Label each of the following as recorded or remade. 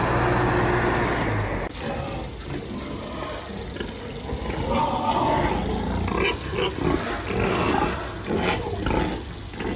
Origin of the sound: recorded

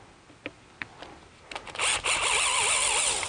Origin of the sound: recorded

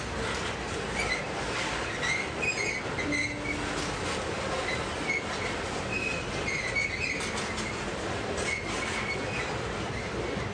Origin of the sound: recorded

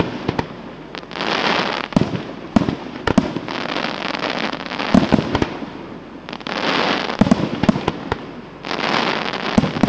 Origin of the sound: recorded